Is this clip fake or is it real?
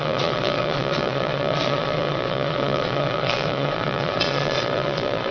fake